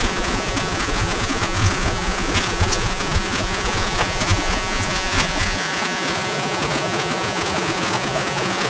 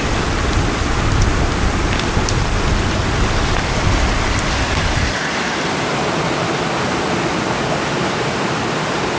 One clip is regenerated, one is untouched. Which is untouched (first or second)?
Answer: second